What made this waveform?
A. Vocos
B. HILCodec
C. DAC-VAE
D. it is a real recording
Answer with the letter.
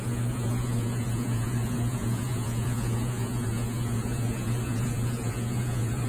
A